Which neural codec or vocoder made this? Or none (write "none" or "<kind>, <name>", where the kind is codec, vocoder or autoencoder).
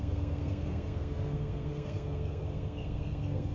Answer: codec, SNAC